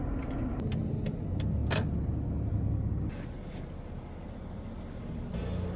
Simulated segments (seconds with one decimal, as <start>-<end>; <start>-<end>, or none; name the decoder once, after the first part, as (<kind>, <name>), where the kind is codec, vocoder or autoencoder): none

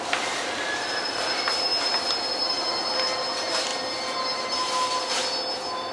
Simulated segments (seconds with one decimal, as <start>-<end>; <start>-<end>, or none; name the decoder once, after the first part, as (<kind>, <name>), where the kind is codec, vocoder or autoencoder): none

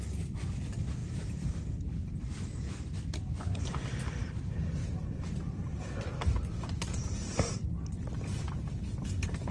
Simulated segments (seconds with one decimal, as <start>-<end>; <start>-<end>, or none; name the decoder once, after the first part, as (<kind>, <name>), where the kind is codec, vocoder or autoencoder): 1.0-1.6 (vocoder, BigVGAN v2); 4.2-8.7

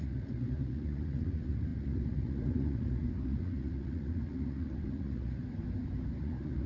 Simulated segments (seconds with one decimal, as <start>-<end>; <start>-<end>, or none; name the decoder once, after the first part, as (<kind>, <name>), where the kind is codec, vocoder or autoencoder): 0.0-5.4 (vocoder, Vocos); 6.2-6.7